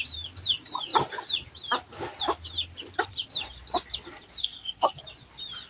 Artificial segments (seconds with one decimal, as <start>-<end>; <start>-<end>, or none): 4.4-5.0